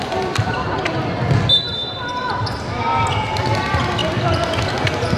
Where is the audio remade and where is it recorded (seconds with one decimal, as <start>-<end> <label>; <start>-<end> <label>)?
0.0-5.2 recorded